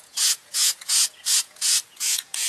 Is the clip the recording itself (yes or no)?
no